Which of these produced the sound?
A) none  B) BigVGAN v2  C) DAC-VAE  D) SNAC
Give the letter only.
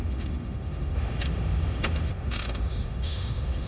C